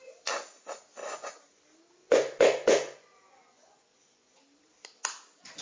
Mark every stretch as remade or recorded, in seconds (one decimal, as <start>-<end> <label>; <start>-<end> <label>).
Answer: 0.0-1.0 recorded; 1.0-1.6 remade; 1.6-2.0 recorded; 2.0-4.4 remade; 4.4-5.6 recorded